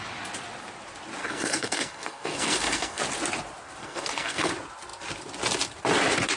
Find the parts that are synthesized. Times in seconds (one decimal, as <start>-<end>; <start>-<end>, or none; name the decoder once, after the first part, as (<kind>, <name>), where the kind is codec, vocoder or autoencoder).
1.2-3.0 (codec, SNAC); 3.8-4.5